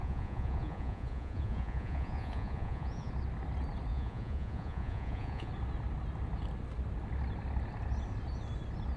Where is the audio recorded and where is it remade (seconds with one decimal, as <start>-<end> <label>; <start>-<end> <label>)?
0.0-3.1 remade; 3.1-3.9 recorded; 3.9-5.5 remade; 5.5-9.0 recorded